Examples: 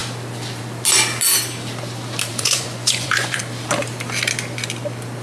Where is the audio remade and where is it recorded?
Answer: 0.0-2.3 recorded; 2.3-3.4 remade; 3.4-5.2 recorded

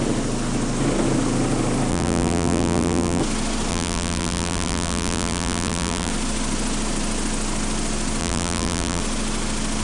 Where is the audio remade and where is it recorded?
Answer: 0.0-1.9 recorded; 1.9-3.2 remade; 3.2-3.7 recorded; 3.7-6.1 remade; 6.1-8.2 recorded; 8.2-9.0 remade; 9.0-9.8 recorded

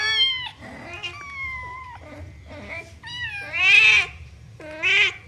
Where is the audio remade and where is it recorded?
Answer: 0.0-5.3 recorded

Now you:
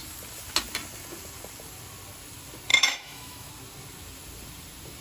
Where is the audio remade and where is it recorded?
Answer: 0.0-2.7 recorded; 2.7-3.5 remade; 3.5-5.0 recorded